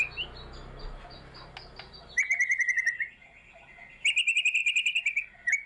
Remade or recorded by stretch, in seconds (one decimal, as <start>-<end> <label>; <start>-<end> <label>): 0.0-5.7 recorded

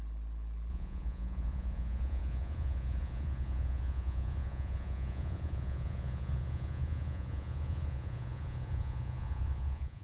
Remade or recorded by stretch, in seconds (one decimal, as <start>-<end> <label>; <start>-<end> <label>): 0.0-0.7 recorded; 0.7-10.0 remade

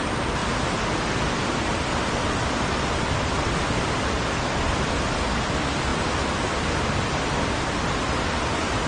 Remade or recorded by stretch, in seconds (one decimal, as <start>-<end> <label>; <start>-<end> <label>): 0.0-8.9 recorded

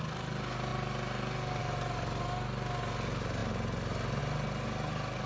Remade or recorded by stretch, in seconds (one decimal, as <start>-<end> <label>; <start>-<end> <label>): 0.0-5.3 recorded

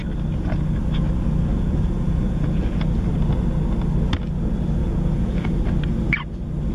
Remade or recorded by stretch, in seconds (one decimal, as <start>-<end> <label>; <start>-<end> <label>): 0.0-1.5 recorded; 1.5-3.0 remade; 3.0-4.8 recorded; 4.8-5.6 remade; 5.6-6.7 recorded

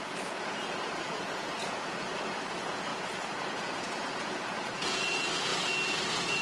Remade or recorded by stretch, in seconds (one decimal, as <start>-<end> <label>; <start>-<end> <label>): 0.0-5.5 remade; 5.5-6.0 recorded; 6.0-6.4 remade

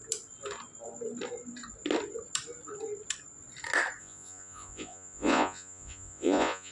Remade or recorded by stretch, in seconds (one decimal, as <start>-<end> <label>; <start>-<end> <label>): 0.0-4.0 recorded; 4.0-6.7 remade

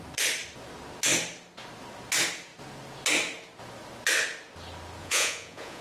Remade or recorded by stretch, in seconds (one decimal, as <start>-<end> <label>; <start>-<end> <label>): 0.0-5.0 recorded; 5.0-5.8 remade